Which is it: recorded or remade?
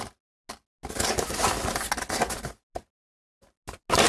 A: recorded